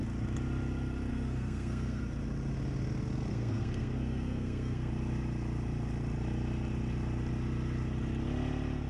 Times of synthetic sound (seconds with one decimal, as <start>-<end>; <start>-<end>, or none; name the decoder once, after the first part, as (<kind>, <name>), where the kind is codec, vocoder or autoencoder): 1.1-2.0 (codec, SNAC); 3.3-4.9